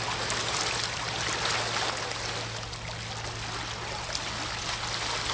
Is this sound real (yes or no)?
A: yes